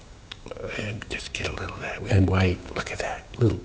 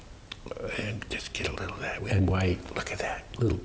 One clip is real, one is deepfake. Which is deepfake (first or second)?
first